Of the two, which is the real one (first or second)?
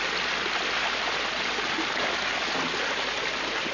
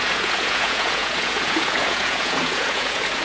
first